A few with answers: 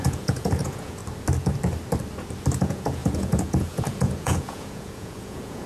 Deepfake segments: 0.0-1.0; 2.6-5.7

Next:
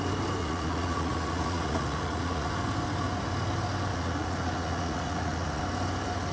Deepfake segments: 0.4-2.5; 3.9-5.6

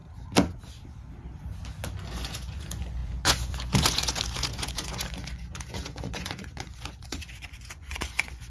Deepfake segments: 2.1-8.5

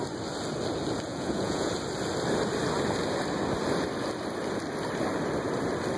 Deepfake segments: 1.1-1.7

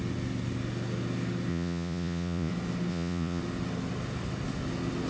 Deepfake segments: 1.5-2.5; 2.9-3.4

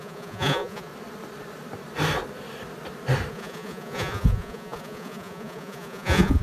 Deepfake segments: 0.0-0.9; 3.3-6.4

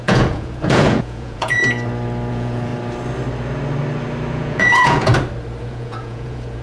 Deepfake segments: 0.0-1.6; 2.3-2.7; 4.3-5.1; 5.6-6.6

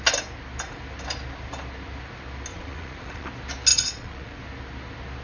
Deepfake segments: 2.5-3.3; 3.7-4.4